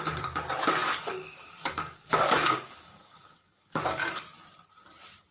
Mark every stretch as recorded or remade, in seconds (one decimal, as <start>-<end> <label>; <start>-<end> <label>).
0.0-0.8 recorded; 0.8-4.0 remade; 4.0-5.3 recorded